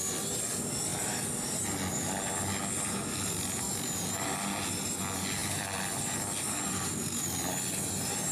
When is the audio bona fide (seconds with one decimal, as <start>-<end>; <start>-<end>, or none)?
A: 0.0-5.4; 6.0-8.3